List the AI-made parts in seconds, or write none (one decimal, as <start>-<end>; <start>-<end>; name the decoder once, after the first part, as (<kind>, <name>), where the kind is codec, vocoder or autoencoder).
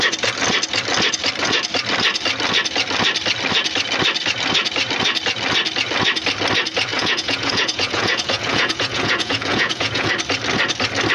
6.9-10.1 (vocoder, Vocos)